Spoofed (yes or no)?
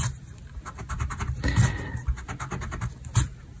no